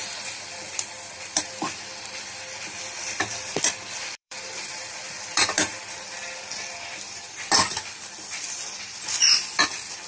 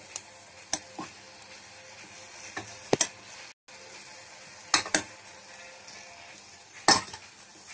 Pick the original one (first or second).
second